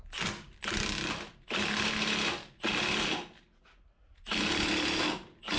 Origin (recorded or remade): recorded